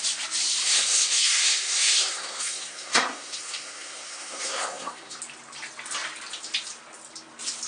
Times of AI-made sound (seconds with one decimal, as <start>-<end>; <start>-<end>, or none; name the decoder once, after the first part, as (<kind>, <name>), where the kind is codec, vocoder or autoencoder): 0.6-5.2 (codec, SNAC)